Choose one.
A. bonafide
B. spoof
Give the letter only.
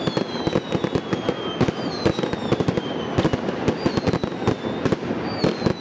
A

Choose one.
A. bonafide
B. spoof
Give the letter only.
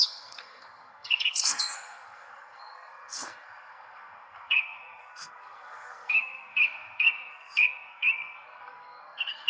B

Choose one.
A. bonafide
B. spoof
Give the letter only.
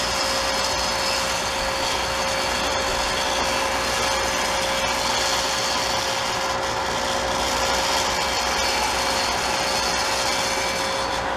A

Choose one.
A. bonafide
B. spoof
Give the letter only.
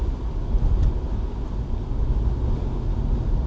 A